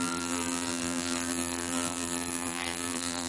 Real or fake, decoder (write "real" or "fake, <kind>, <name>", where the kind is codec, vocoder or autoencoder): fake, vocoder, BigVGAN v2